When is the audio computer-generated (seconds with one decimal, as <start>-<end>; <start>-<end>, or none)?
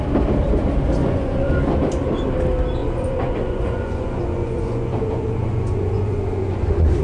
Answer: 1.0-1.5; 2.8-7.0